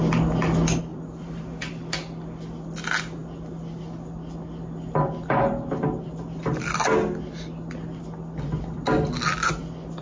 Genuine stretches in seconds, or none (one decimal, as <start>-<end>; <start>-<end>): 0.0-0.9; 1.4-10.0